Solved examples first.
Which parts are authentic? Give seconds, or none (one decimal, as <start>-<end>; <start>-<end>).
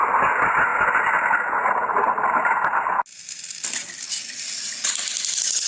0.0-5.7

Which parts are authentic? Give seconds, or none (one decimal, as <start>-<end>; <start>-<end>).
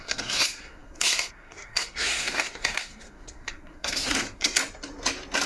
4.6-5.5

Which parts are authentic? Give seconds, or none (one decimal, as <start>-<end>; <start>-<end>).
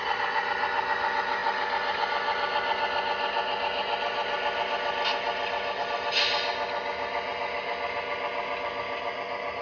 0.0-9.6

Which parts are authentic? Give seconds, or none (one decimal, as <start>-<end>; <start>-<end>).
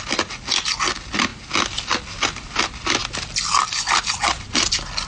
0.0-5.1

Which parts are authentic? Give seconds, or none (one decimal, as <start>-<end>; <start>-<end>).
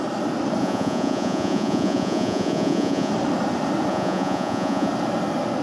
0.0-0.6; 3.1-3.9; 4.9-5.6